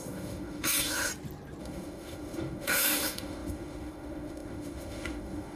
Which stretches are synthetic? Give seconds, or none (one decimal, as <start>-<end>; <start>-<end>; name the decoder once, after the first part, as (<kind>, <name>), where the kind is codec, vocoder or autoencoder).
0.0-1.1 (autoencoder, DAC-VAE); 1.6-5.6